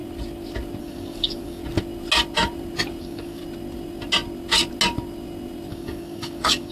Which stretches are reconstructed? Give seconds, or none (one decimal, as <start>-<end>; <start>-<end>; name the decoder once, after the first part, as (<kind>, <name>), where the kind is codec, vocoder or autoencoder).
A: 0.8-1.6 (codec, DAC); 3.0-3.4; 5.7-6.7